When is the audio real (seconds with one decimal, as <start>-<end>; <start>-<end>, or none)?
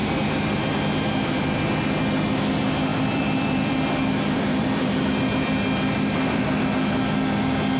0.0-2.9; 6.6-7.8